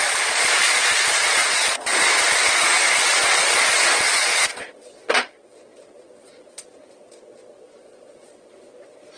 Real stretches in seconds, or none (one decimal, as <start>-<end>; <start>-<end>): none